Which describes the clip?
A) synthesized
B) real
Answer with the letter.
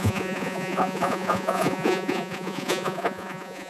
A